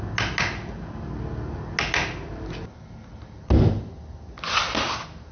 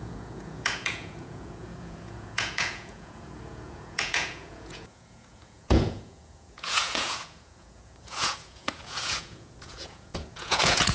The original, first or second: first